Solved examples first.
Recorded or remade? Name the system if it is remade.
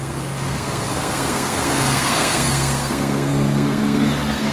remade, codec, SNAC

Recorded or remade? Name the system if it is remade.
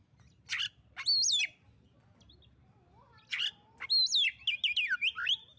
recorded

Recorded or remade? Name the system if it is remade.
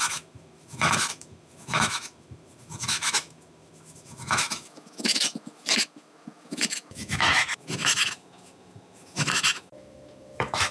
remade, autoencoder, DAC-VAE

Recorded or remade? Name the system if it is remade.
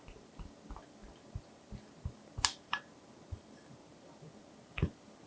recorded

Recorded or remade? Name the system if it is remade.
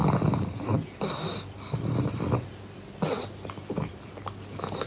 recorded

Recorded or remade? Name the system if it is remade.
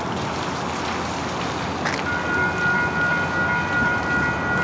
recorded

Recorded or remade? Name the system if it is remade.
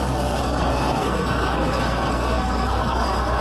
remade, codec, SNAC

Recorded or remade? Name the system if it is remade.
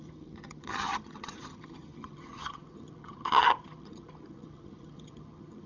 remade, vocoder, HiFi-GAN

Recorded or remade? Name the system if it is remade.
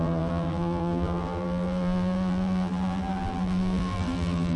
remade, vocoder, BigVGAN v2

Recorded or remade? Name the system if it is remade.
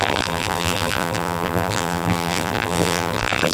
remade, vocoder, BigVGAN v2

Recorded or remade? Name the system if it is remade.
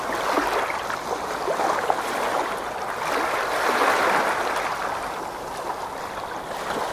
recorded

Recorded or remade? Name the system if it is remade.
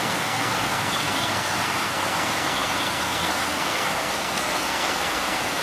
remade, codec, SNAC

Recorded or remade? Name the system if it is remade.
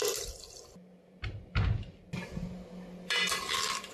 recorded